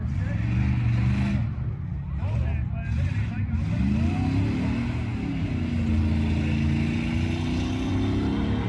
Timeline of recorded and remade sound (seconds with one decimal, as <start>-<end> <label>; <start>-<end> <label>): 0.0-8.7 recorded